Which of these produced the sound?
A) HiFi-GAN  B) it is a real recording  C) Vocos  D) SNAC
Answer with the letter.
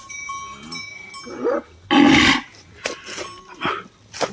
B